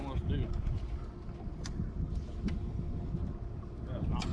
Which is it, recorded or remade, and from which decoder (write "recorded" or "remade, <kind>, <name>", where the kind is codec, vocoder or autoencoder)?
recorded